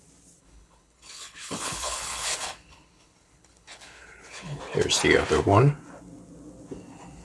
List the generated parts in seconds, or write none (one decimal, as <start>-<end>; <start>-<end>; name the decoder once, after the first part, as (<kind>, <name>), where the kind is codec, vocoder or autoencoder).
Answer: 0.4-4.6 (codec, HILCodec)